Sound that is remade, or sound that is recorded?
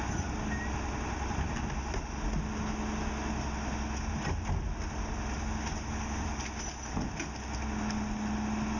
recorded